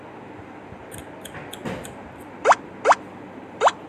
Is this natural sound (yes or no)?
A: yes